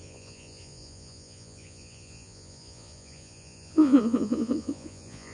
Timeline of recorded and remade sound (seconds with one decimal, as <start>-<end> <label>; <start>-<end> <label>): 0.0-5.3 remade

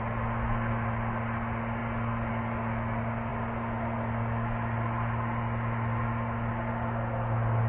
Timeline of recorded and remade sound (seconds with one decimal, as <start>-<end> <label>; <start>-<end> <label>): 0.0-7.7 recorded

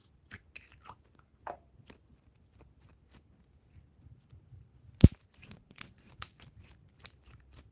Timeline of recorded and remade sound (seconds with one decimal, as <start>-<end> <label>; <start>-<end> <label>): 0.0-5.4 recorded; 5.4-6.1 remade; 6.1-7.7 recorded